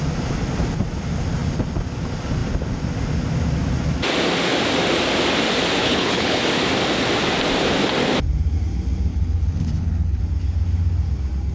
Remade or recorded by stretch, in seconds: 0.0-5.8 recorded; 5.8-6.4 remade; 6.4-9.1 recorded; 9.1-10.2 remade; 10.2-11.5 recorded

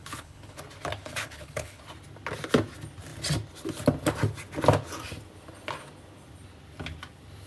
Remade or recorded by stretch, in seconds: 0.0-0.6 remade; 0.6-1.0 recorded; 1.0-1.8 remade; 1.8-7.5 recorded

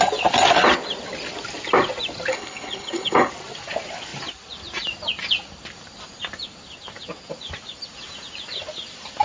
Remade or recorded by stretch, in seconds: 0.0-2.3 recorded; 2.3-3.3 remade; 3.3-9.2 recorded

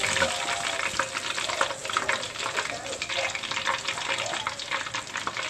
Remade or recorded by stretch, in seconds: 0.0-5.5 recorded

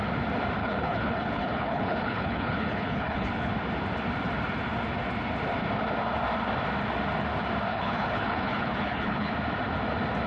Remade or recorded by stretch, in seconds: 0.0-0.6 recorded; 0.6-3.5 remade; 3.5-7.7 recorded; 7.7-9.3 remade; 9.3-10.3 recorded

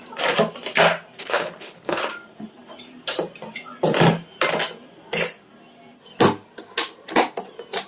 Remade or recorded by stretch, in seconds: 0.0-1.2 recorded; 1.2-2.0 remade; 2.0-7.9 recorded

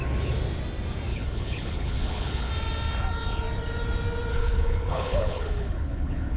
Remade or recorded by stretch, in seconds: 0.0-1.1 recorded; 1.1-2.5 remade; 2.5-4.3 recorded; 4.3-6.4 remade

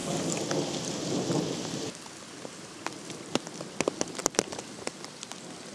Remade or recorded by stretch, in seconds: 0.0-5.7 recorded